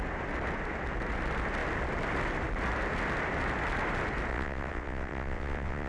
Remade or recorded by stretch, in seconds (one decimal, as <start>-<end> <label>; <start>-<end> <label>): 0.0-4.3 recorded; 4.3-5.9 remade